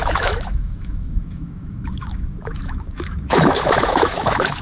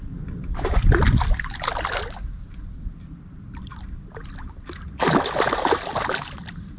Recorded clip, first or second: second